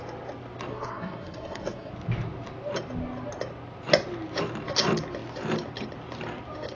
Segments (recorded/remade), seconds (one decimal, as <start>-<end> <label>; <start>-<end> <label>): 0.0-0.7 recorded; 0.7-1.9 remade; 1.9-6.8 recorded